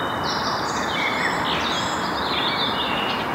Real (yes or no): yes